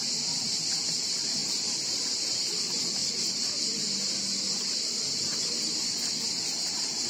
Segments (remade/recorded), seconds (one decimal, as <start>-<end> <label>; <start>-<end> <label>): 0.0-1.4 recorded; 1.4-2.6 remade; 2.6-3.0 recorded; 3.0-7.1 remade